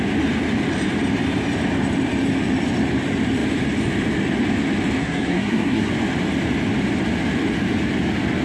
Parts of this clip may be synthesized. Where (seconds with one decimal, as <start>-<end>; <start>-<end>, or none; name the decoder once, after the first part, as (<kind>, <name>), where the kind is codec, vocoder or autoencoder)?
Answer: 5.0-5.9 (codec, SNAC)